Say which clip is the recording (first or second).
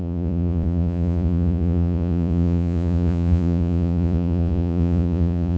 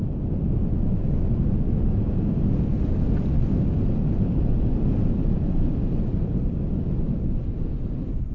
second